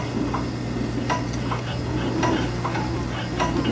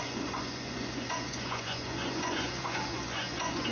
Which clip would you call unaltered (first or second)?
first